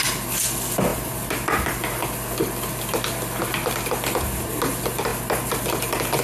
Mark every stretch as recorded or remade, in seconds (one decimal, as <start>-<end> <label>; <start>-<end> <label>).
0.0-6.2 recorded